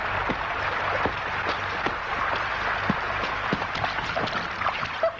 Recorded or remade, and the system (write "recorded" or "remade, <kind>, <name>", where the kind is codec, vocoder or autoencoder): recorded